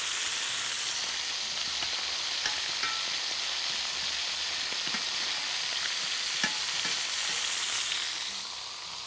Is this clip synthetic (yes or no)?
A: no